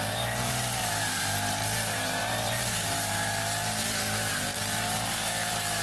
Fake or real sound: fake